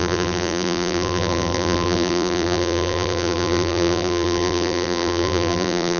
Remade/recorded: remade